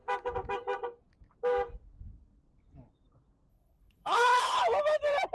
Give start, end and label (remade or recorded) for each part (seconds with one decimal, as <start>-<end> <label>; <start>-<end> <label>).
0.0-3.5 recorded; 3.5-4.6 remade; 4.6-5.3 recorded

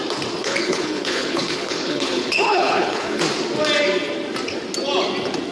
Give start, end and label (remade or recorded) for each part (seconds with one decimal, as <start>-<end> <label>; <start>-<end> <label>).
0.0-0.4 recorded; 0.4-3.2 remade; 3.2-5.5 recorded